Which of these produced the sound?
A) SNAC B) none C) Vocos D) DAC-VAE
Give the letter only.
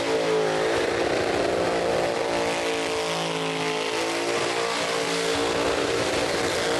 B